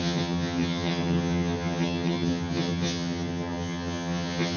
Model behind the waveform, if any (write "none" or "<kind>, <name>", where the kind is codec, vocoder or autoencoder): vocoder, HiFi-GAN